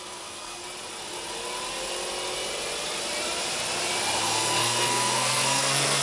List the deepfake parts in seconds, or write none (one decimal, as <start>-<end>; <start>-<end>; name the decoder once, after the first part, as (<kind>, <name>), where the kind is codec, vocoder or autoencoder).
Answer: 0.0-0.6 (codec, SNAC); 4.2-6.0